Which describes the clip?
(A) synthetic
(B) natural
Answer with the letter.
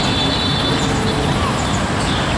B